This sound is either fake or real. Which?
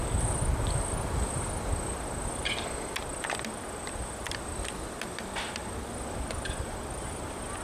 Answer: real